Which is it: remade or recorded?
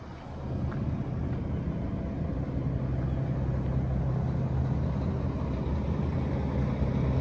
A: recorded